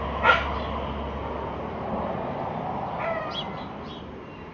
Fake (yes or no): no